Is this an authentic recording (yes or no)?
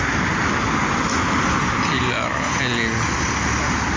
yes